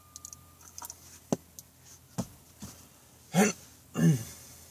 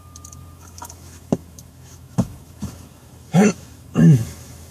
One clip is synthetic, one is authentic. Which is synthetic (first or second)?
second